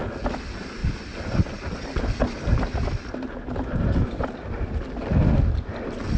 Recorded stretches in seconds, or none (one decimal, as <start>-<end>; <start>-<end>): 0.0-6.2